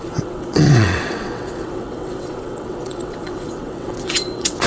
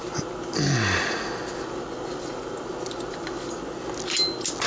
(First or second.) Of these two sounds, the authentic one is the second